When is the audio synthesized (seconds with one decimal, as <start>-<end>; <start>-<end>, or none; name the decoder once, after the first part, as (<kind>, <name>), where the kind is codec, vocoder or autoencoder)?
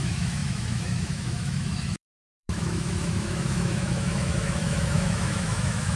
0.0-6.0 (autoencoder, DAC-VAE)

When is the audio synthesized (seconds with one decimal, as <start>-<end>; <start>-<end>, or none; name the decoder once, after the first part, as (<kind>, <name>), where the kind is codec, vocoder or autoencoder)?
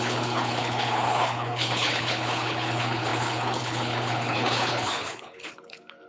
0.0-6.1 (codec, HILCodec)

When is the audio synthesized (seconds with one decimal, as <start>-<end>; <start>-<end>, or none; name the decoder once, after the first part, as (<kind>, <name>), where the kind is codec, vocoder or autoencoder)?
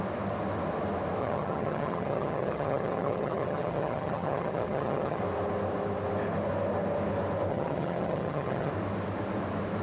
1.2-5.2 (vocoder, HiFi-GAN); 7.5-8.7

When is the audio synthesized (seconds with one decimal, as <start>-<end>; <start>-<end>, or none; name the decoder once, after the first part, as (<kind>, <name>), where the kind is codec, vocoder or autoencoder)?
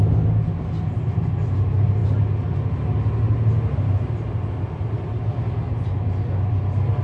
none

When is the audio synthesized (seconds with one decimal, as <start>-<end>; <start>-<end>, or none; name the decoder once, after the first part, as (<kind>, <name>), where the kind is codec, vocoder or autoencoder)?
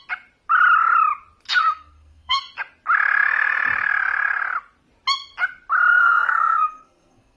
1.6-2.4 (codec, SNAC); 5.9-7.4